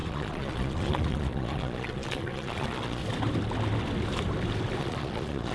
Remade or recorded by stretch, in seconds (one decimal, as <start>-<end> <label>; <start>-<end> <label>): 0.0-3.0 remade; 3.0-4.8 recorded; 4.8-5.5 remade